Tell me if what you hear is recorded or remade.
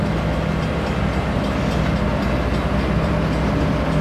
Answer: recorded